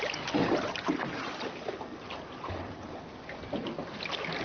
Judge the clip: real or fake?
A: real